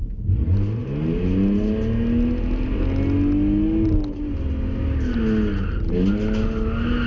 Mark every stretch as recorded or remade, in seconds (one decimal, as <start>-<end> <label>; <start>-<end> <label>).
0.0-7.1 recorded